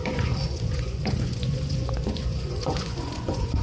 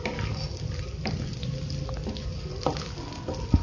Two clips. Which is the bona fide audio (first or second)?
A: second